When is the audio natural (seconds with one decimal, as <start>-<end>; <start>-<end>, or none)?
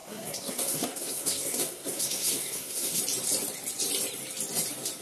3.0-5.0